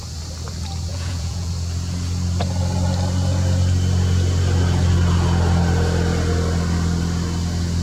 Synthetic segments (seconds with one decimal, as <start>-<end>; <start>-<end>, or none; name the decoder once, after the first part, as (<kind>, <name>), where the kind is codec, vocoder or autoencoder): 0.9-1.5 (vocoder, Vocos)